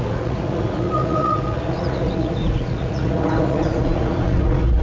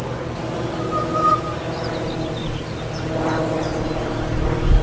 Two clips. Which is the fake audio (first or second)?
first